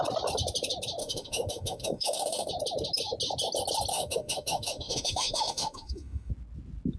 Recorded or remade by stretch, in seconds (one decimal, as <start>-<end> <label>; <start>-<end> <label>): 0.0-1.0 recorded; 1.0-2.5 remade; 2.5-3.9 recorded; 3.9-6.3 remade; 6.3-7.0 recorded

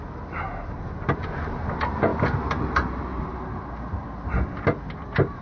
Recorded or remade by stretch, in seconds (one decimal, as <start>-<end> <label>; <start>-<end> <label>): 0.0-5.4 recorded